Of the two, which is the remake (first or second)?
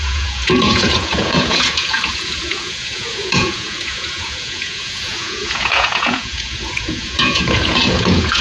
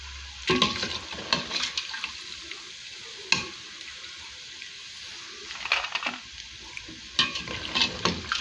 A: first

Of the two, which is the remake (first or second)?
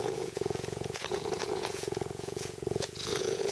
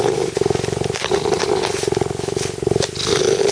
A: first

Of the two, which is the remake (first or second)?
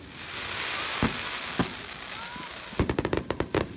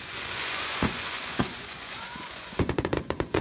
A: second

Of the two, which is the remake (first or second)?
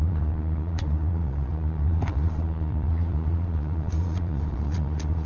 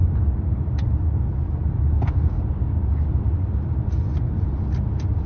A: first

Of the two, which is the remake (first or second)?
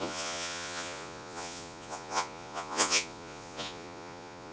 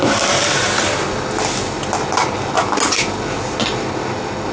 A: first